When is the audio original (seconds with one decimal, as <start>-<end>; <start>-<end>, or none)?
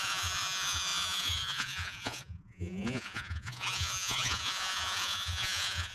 none